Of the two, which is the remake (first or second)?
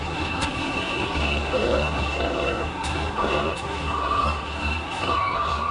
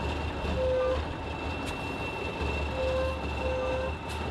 first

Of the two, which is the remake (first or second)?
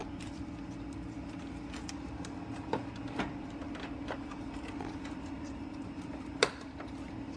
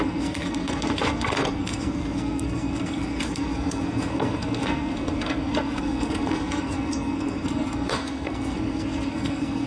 second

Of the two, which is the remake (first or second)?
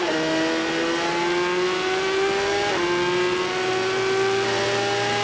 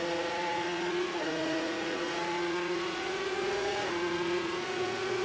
second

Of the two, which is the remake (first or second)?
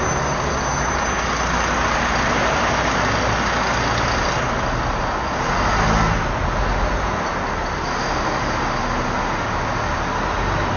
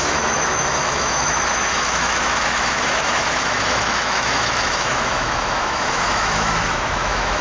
second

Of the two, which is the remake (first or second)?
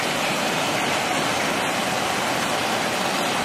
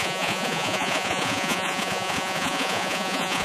second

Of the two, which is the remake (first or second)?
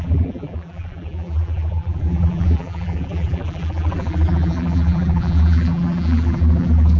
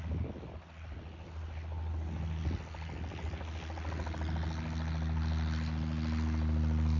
first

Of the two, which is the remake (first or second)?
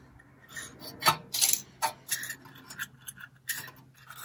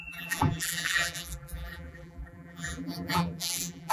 second